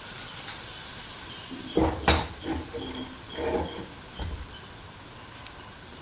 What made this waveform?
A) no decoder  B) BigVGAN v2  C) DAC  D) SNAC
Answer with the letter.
A